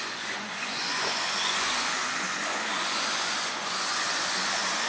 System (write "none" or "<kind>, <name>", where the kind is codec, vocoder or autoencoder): vocoder, Vocos